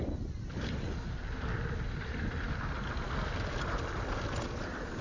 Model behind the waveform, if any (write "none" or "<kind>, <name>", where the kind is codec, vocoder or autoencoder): none